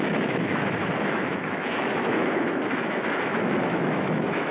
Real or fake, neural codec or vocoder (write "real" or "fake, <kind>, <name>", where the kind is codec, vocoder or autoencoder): fake, autoencoder, DAC-VAE